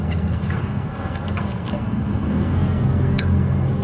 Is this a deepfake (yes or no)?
yes